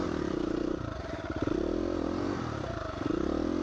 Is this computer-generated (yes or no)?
yes